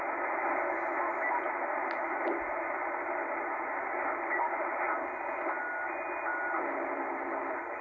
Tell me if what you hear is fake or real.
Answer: real